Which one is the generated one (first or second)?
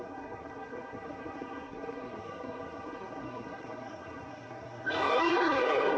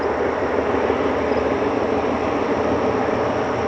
first